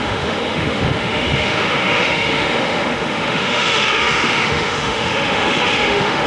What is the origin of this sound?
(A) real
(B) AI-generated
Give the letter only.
B